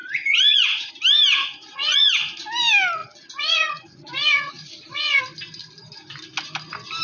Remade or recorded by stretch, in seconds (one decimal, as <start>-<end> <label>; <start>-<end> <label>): 0.0-0.9 remade; 0.9-1.3 recorded; 1.3-2.1 remade; 2.1-3.0 recorded; 3.0-5.2 remade; 5.2-7.0 recorded